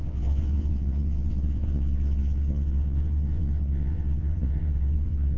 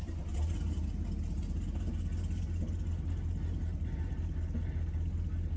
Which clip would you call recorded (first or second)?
second